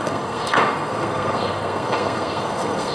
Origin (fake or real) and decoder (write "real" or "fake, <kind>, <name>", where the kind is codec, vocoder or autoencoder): fake, codec, SNAC